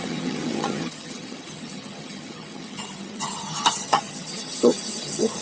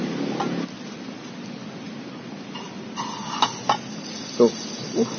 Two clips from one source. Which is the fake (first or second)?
first